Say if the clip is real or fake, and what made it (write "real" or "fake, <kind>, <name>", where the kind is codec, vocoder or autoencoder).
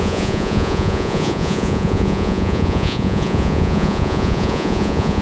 fake, vocoder, Vocos